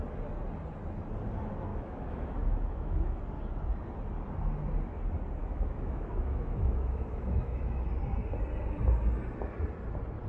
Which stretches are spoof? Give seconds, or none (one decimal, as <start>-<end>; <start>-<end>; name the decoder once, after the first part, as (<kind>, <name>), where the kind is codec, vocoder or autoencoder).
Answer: 1.7-3.2 (autoencoder, DAC-VAE); 5.4-7.9